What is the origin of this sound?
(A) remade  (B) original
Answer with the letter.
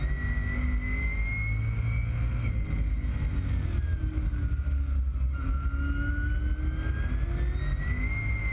B